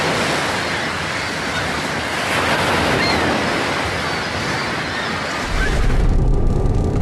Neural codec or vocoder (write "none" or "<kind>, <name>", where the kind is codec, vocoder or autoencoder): none